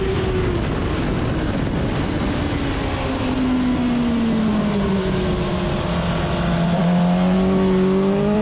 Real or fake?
real